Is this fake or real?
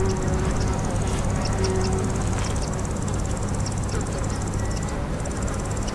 real